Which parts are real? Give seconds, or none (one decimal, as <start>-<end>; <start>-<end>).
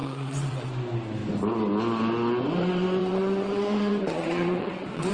0.7-3.0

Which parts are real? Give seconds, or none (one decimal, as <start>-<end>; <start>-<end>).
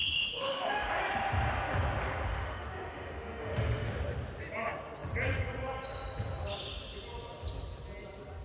0.9-2.3; 3.9-8.4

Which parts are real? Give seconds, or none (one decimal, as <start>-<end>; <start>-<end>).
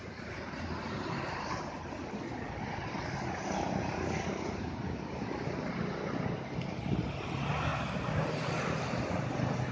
0.0-9.7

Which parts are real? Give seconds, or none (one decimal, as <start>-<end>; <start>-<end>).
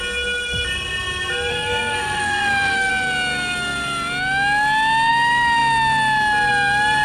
0.0-1.5; 2.9-7.0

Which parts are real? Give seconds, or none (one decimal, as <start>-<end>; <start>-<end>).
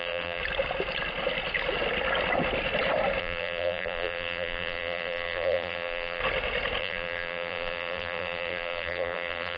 0.4-3.2; 6.2-6.8